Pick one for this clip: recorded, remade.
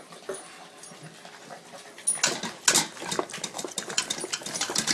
recorded